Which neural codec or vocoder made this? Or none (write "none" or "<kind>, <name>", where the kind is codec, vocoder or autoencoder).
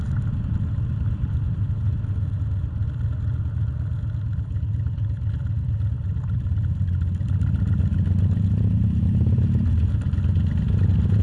none